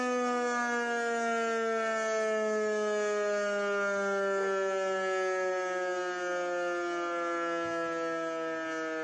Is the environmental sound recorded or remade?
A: recorded